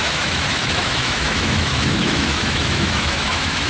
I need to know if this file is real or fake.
fake